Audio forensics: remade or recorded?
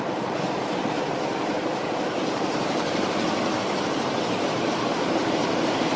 remade